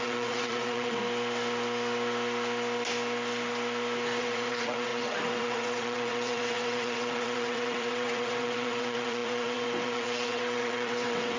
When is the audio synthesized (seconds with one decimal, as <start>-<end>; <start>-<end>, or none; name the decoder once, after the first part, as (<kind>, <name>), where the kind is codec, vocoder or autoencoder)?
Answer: 0.0-1.0 (vocoder, WaveNeXt); 4.2-11.4